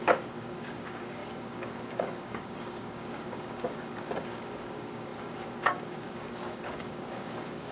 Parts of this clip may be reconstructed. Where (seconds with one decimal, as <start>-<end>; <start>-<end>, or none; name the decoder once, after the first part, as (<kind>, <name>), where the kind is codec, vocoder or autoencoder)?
0.0-7.7 (codec, DAC)